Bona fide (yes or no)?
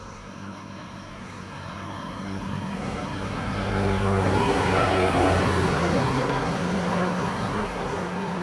no